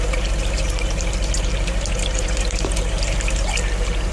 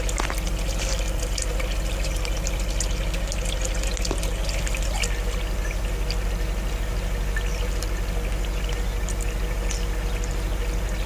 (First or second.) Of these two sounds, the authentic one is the second